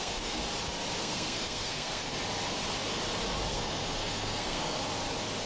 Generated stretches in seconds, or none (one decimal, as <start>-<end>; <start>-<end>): 0.0-0.4; 1.0-2.0; 3.5-4.8